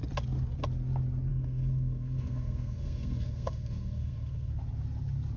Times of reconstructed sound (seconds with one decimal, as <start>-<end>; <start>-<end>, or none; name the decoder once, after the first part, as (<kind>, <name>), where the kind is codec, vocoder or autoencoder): 1.3-4.5 (codec, SNAC)